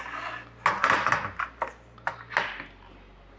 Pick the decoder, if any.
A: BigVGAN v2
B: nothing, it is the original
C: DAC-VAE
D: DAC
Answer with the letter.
B